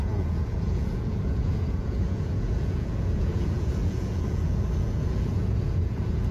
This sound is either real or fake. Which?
fake